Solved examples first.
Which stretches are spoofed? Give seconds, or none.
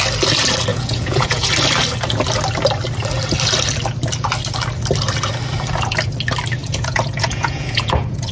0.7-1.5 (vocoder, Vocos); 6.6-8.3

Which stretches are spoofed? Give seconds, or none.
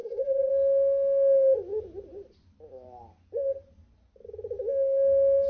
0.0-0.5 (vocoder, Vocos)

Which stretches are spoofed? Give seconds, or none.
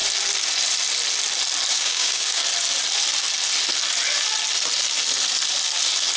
1.7-2.4 (codec, DAC)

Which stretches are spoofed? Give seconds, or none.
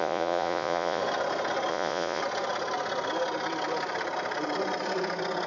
0.0-1.0 (vocoder, Vocos); 1.7-2.2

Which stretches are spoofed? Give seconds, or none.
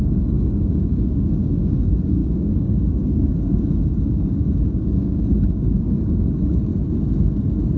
0.0-6.7 (codec, DAC)